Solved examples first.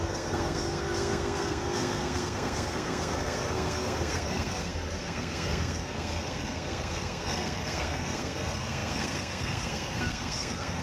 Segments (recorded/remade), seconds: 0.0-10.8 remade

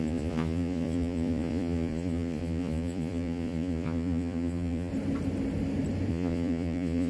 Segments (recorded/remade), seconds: 0.0-4.9 remade; 4.9-6.1 recorded; 6.1-7.1 remade

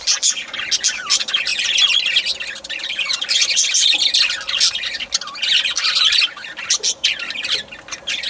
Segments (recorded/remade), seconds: 0.0-8.3 recorded

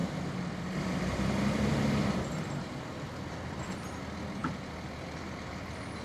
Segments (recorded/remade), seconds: 0.0-3.6 remade; 3.6-4.4 recorded; 4.4-5.5 remade; 5.5-6.0 recorded

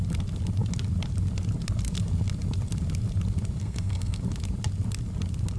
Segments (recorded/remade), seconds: 0.0-3.6 recorded; 3.6-4.2 remade; 4.2-5.6 recorded

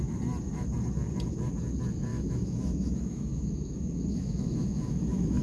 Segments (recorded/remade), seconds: 0.0-2.1 recorded; 2.1-5.4 remade